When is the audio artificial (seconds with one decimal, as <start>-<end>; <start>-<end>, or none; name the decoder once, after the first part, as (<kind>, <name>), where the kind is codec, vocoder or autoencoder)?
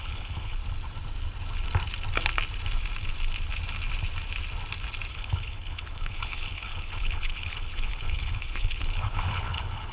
0.0-0.6 (codec, HILCodec); 5.1-9.9